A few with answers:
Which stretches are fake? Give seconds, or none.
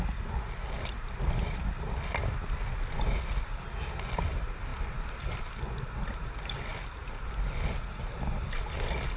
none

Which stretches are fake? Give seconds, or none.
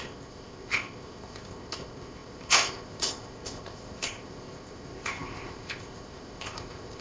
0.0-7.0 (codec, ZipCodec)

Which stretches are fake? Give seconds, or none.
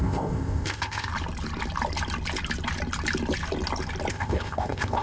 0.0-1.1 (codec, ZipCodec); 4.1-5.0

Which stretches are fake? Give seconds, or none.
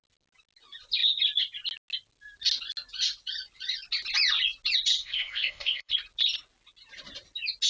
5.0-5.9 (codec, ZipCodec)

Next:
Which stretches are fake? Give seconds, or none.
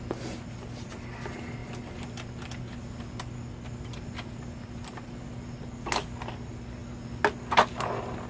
none